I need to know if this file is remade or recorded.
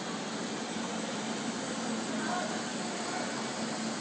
recorded